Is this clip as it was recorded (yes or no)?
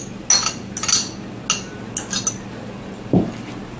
yes